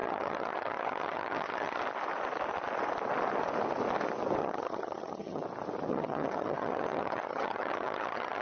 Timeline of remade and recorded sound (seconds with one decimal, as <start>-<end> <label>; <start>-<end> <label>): 0.0-1.8 remade; 1.8-4.4 recorded; 4.4-5.4 remade; 5.4-5.9 recorded; 5.9-8.4 remade